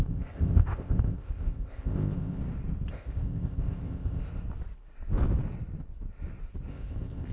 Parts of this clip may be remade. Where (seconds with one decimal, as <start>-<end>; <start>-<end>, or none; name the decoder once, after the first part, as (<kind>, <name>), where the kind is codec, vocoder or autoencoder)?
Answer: 0.0-2.4 (codec, ZipCodec); 2.9-4.3; 6.7-7.3